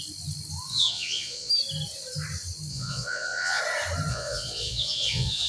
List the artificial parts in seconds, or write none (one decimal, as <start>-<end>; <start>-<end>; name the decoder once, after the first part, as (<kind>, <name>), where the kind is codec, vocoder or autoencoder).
0.7-1.5 (vocoder, Vocos); 2.7-3.6; 4.1-5.5